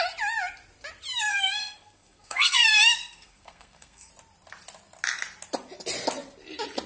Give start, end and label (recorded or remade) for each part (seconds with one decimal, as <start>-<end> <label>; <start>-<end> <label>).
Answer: 0.0-1.3 recorded; 1.3-4.1 remade; 4.1-6.9 recorded